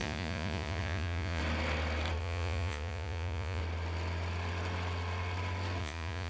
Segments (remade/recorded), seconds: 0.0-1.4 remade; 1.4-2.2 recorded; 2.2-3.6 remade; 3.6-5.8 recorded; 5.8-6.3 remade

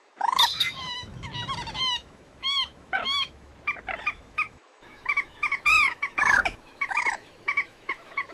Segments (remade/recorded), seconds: 0.0-1.3 remade; 1.3-1.8 recorded; 1.8-3.5 remade; 3.5-4.1 recorded; 4.1-8.3 remade

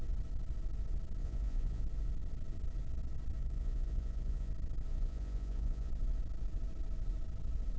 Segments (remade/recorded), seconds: 0.0-1.2 recorded; 1.2-1.8 remade; 1.8-3.4 recorded; 3.4-4.5 remade; 4.5-4.9 recorded; 4.9-5.9 remade; 5.9-7.8 recorded

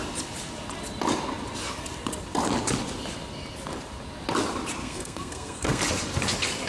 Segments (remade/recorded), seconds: 0.0-4.8 recorded; 4.8-5.8 remade; 5.8-6.7 recorded

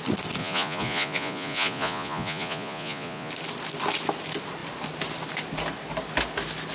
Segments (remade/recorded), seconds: 0.0-0.4 recorded; 0.4-3.3 remade; 3.3-6.7 recorded

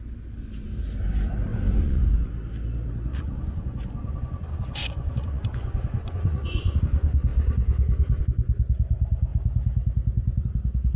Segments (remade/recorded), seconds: 0.0-1.5 recorded; 1.5-2.3 remade; 2.3-3.1 recorded; 3.1-6.8 remade; 6.8-11.0 recorded

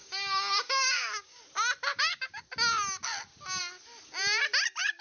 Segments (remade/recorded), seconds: 0.0-1.4 remade; 1.4-1.9 recorded; 1.9-2.4 remade; 2.4-5.0 recorded

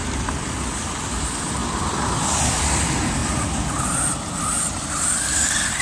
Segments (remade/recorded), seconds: 0.0-1.6 recorded; 1.6-2.6 remade; 2.6-5.8 recorded